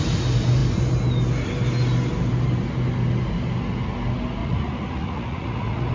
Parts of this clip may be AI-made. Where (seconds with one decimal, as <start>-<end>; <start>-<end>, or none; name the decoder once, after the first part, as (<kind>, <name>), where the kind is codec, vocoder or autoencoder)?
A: 4.4-5.9 (vocoder, Vocos)